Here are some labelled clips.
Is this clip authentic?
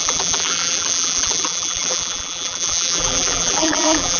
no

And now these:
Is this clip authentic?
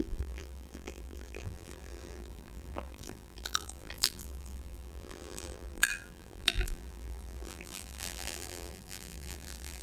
no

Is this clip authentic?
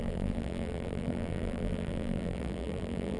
no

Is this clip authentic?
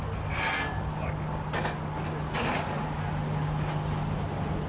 yes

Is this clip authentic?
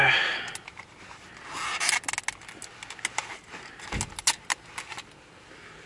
yes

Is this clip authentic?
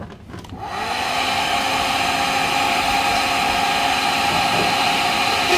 yes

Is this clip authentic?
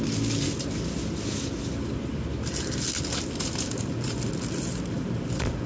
yes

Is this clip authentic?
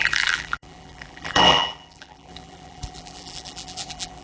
no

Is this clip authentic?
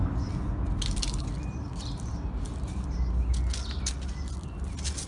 yes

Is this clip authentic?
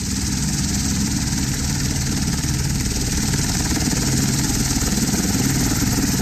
no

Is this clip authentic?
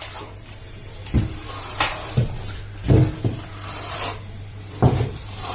no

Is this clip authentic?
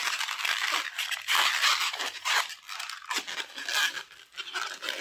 no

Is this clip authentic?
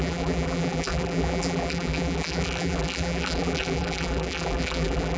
no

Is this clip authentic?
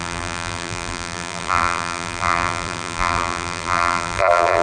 no